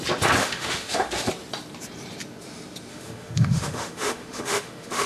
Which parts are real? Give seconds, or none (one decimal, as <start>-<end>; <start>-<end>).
0.0-0.4; 1.3-2.9